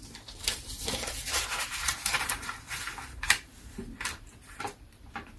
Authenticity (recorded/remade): remade